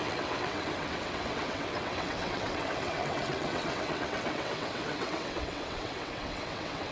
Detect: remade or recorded remade